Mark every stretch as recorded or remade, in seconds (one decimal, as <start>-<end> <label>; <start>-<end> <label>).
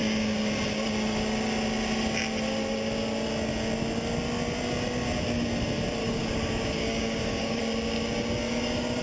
0.0-6.0 recorded; 6.0-7.6 remade; 7.6-9.0 recorded